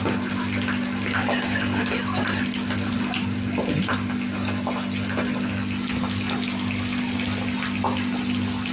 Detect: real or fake real